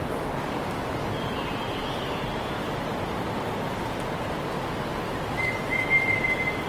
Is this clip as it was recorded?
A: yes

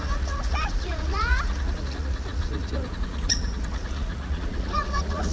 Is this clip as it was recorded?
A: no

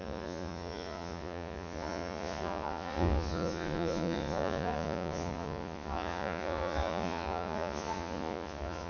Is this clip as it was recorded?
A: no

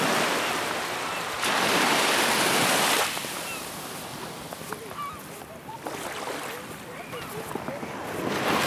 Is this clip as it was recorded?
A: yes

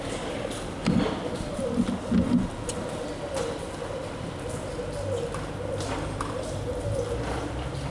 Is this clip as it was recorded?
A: yes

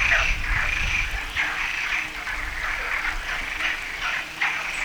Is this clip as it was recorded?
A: yes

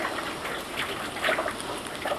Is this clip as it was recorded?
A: yes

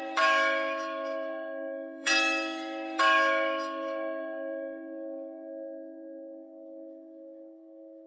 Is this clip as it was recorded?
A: no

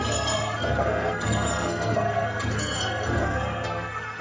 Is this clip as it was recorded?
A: no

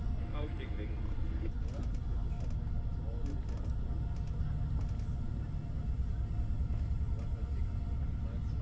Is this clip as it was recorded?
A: yes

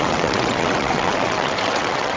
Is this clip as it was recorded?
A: no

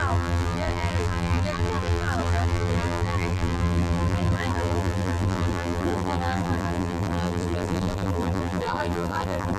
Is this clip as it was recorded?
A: no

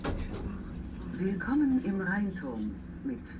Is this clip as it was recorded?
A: yes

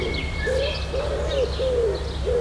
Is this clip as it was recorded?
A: yes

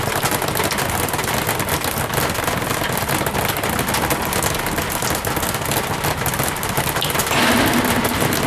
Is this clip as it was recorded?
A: yes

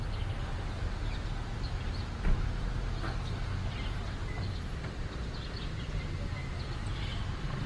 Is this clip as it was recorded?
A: yes